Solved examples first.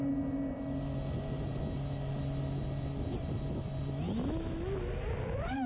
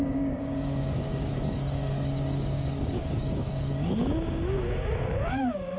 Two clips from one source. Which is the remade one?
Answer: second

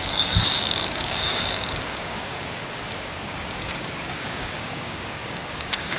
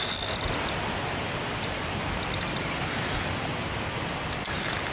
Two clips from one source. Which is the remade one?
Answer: first